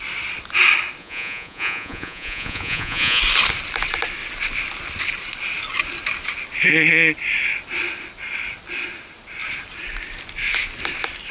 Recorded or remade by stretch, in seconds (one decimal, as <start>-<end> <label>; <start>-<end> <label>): 0.0-1.0 recorded; 1.0-3.2 remade; 3.2-11.3 recorded